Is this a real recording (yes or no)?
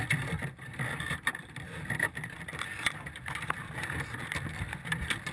no